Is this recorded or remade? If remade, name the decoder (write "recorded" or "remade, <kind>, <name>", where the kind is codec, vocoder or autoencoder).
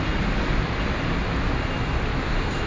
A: recorded